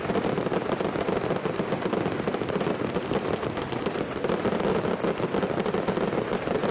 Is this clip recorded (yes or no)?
yes